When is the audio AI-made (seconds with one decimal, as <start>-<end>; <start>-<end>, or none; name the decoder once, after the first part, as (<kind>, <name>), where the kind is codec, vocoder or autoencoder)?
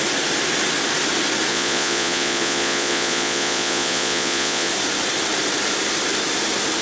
1.5-4.7 (vocoder, Vocos)